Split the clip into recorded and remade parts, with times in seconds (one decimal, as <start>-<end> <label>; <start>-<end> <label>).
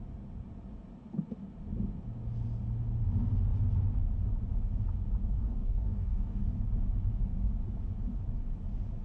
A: 0.0-5.2 recorded; 5.2-6.4 remade; 6.4-9.0 recorded